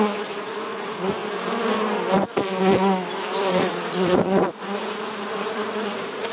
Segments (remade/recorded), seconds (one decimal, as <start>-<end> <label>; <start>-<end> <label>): 0.0-1.2 remade; 1.2-3.4 recorded; 3.4-6.3 remade